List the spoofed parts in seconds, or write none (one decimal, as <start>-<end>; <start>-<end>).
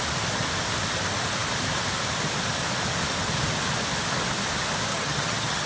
4.9-5.7